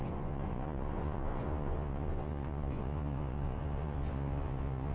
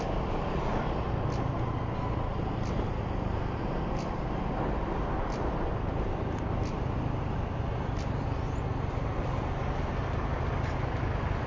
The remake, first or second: first